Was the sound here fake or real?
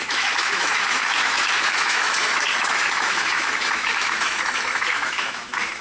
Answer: fake